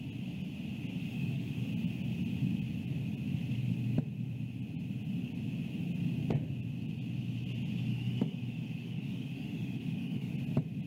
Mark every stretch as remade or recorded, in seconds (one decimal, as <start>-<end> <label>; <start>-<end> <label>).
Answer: 0.0-1.1 recorded; 1.1-1.7 remade; 1.7-7.9 recorded; 7.9-10.3 remade; 10.3-10.9 recorded